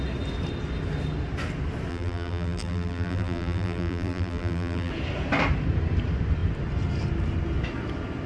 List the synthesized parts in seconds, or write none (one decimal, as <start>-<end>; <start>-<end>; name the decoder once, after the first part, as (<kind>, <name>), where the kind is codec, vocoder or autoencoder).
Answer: 1.9-4.9 (vocoder, BigVGAN v2)